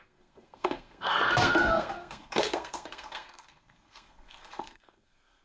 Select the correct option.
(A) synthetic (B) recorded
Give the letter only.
A